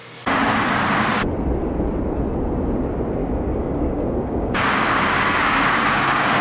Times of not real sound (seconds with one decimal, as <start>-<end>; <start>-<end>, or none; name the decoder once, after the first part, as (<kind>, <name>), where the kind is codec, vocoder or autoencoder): 3.2-6.4 (codec, DAC)